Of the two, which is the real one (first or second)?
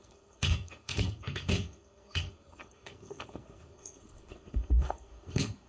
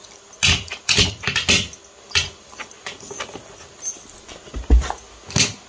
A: second